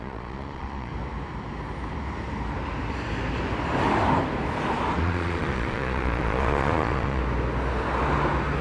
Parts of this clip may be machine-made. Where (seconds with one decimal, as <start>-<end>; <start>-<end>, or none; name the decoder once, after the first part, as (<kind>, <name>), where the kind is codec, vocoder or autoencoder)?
0.0-0.9 (vocoder, Vocos); 5.0-7.2